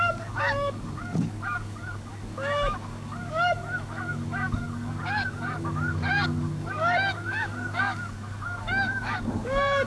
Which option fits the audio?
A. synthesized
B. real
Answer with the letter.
A